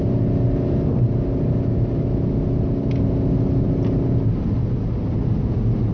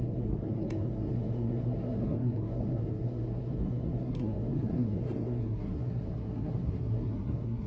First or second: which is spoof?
second